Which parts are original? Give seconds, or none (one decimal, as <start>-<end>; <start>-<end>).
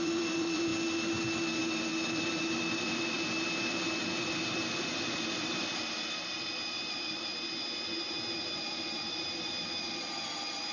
0.7-1.6; 7.3-8.7